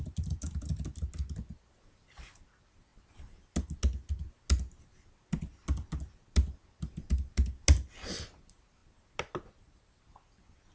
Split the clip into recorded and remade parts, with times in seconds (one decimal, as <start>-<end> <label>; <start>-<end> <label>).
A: 0.0-10.7 recorded